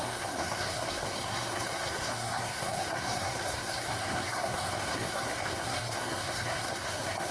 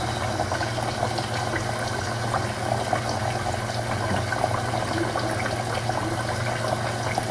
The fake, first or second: first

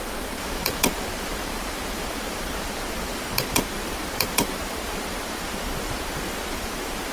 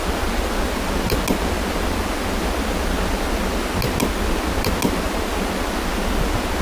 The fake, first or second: first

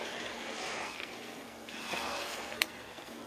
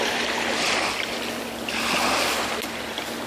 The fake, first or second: first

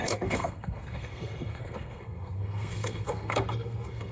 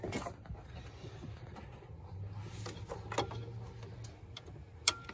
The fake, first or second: first